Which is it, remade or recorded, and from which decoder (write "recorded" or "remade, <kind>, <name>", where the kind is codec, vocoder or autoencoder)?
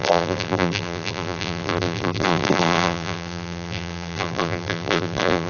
remade, vocoder, BigVGAN v2